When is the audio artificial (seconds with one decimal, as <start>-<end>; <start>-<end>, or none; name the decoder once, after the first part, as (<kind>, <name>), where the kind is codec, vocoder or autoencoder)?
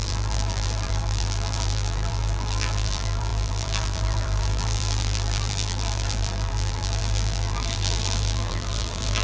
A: 0.0-9.2 (vocoder, BigVGAN v2)